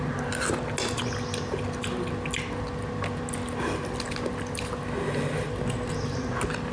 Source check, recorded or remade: recorded